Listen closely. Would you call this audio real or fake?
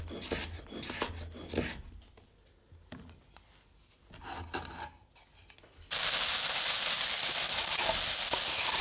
real